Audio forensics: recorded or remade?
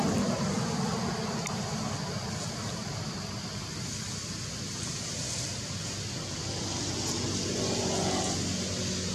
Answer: recorded